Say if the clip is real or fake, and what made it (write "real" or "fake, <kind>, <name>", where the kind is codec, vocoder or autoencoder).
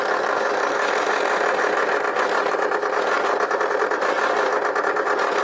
real